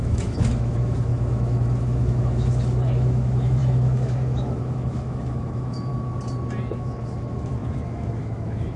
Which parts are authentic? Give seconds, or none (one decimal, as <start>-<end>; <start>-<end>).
5.9-6.7